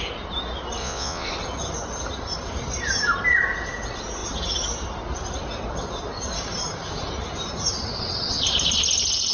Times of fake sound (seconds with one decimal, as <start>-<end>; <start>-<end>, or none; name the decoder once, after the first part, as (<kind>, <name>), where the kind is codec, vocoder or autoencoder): 0.8-1.3 (vocoder, Vocos)